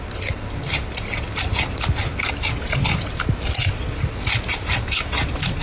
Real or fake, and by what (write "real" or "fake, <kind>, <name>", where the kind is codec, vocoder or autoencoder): real